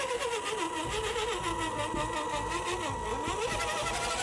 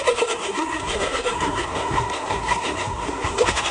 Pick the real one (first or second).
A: first